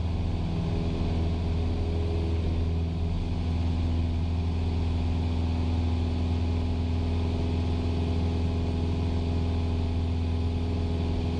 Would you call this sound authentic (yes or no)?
yes